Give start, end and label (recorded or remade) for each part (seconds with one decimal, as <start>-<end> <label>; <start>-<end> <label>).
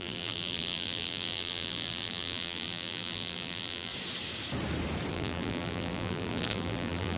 0.0-3.9 remade; 3.9-5.1 recorded; 5.1-7.2 remade